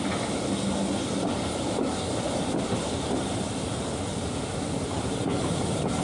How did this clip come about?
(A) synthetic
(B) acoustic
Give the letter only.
B